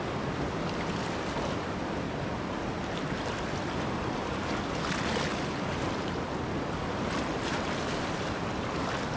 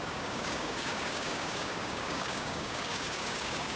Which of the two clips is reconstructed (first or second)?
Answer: second